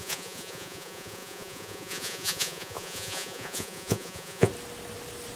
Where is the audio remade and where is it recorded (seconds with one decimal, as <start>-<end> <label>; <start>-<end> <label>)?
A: 0.0-4.5 remade; 4.5-5.4 recorded